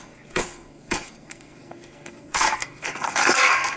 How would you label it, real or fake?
fake